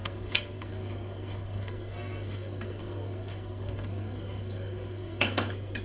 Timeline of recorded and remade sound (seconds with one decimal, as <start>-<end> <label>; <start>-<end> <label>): 0.0-5.8 remade